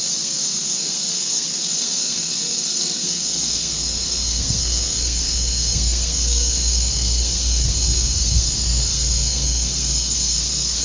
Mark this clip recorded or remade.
remade